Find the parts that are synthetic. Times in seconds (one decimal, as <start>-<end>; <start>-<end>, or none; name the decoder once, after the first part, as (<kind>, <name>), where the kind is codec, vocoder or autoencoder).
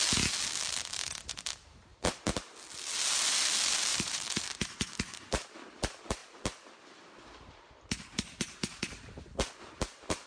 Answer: 1.9-2.5 (vocoder, BigVGAN v2); 3.9-4.9